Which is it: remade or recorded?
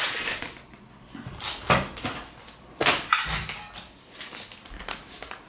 recorded